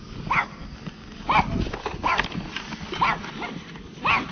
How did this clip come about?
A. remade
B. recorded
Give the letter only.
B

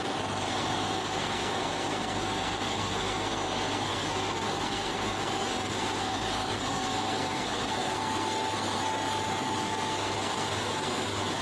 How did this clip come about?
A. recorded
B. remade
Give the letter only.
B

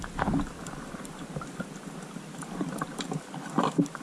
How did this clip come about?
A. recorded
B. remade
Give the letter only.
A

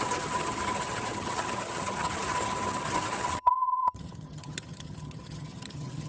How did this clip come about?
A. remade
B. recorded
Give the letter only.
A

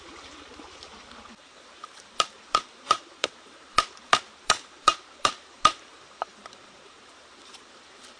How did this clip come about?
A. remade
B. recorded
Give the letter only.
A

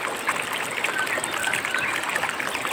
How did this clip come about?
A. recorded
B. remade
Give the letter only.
A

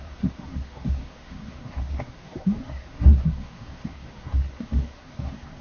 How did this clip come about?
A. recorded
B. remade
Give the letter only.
B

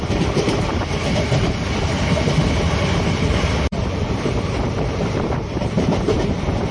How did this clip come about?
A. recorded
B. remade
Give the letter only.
B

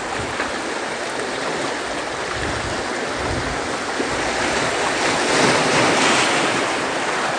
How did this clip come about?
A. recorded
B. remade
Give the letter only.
A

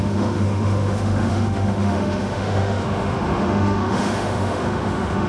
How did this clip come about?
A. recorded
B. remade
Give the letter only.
B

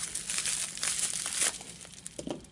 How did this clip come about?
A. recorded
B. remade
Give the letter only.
A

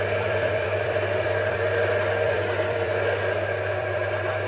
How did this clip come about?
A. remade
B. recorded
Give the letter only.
A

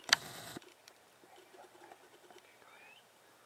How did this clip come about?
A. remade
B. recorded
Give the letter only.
A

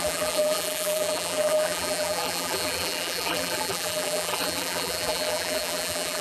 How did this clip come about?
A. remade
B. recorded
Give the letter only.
A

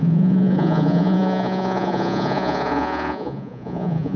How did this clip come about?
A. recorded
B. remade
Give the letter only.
B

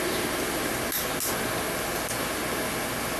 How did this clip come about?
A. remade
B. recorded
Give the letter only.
B